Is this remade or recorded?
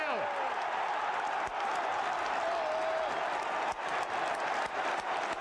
recorded